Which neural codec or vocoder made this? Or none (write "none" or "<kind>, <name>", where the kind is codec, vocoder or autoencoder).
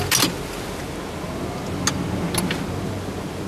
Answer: none